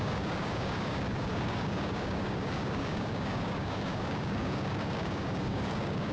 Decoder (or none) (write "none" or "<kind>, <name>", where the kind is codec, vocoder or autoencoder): codec, DAC